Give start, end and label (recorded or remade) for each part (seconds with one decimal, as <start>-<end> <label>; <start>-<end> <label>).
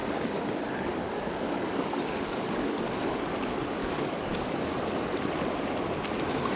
0.0-2.8 remade; 2.8-3.8 recorded; 3.8-4.7 remade; 4.7-6.6 recorded